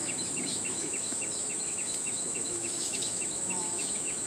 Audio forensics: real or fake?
fake